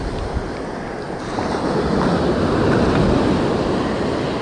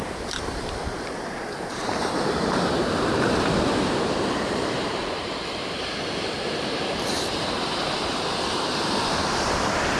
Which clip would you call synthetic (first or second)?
second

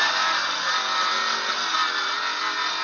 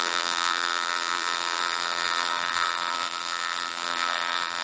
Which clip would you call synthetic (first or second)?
second